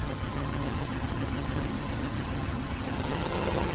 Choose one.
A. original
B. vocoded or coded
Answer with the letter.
B